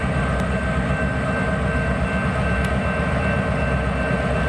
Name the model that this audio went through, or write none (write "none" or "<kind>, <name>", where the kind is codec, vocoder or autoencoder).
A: none